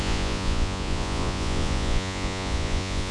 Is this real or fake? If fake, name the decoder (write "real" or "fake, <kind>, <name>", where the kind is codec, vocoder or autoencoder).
fake, vocoder, Vocos